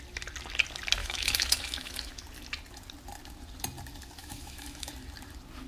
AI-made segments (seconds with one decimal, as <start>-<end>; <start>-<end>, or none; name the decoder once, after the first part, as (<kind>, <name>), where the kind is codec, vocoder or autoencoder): 1.0-2.1 (autoencoder, DAC-VAE); 4.2-4.9